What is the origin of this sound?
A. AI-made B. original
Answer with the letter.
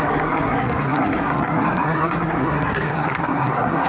A